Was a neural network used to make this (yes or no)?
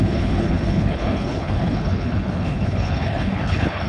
yes